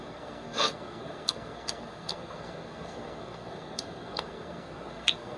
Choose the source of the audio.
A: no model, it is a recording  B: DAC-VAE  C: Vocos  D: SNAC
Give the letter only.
D